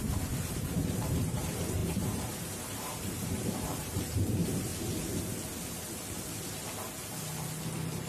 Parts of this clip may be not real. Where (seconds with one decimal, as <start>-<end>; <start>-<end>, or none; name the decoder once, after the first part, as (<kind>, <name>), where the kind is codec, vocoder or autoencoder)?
0.0-4.7 (vocoder, BigVGAN v2)